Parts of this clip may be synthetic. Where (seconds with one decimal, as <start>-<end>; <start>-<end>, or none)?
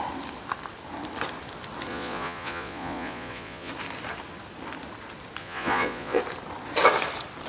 1.9-3.7; 5.4-6.2